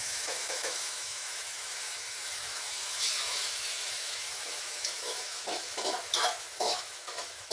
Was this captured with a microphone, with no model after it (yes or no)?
no